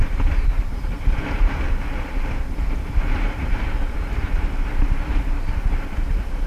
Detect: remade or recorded remade